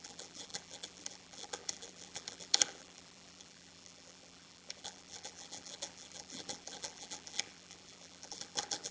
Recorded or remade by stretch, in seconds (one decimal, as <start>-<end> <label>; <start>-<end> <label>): 0.0-8.9 remade